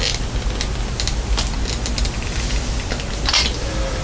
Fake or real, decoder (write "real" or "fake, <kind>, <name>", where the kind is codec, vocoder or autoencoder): real